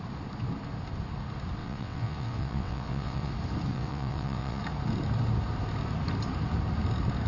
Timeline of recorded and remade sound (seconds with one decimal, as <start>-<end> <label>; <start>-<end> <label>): 0.0-1.6 recorded; 1.6-3.3 remade; 3.3-3.7 recorded; 3.7-4.6 remade; 4.6-7.3 recorded